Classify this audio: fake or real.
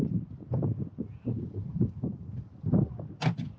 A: real